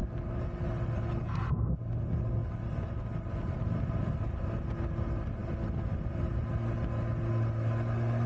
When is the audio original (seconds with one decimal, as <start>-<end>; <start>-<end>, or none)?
0.0-8.3